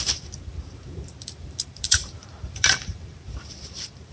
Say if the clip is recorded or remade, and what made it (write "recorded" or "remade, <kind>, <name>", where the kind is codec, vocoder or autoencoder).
remade, vocoder, BigVGAN v2